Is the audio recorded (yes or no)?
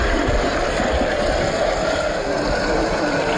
yes